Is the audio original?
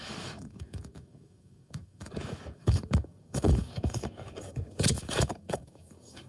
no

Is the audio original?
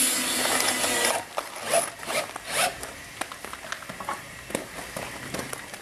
yes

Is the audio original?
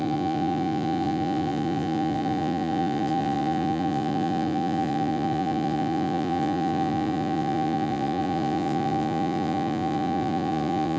no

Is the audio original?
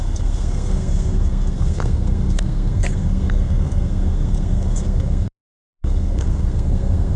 no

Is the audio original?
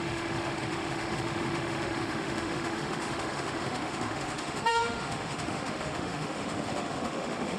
no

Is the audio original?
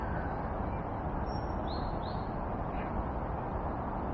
yes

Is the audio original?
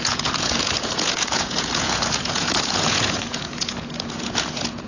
no